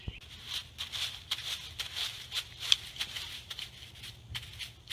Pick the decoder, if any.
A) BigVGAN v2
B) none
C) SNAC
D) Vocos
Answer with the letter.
B